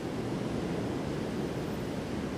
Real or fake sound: real